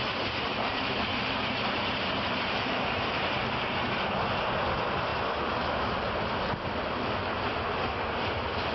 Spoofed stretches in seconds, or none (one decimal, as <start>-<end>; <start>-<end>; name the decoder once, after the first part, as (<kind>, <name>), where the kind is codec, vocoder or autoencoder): 0.5-3.4 (vocoder, BigVGAN v2)